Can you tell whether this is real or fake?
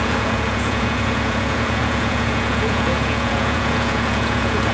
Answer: fake